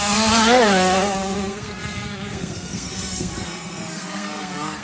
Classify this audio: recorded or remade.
remade